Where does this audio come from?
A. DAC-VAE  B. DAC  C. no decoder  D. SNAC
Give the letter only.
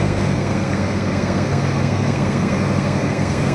D